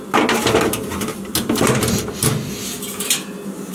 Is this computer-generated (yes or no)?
no